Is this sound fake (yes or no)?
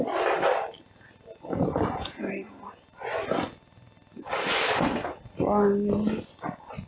no